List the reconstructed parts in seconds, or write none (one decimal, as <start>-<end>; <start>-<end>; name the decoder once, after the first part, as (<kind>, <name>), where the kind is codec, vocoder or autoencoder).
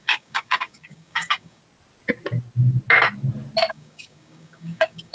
0.0-1.6 (codec, DAC); 3.7-5.1